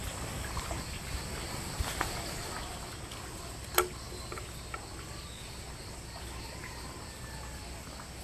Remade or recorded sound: recorded